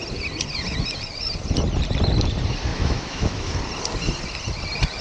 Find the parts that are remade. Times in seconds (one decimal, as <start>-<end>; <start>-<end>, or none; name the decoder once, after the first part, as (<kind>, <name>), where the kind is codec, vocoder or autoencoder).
2.7-3.5 (autoencoder, DAC-VAE)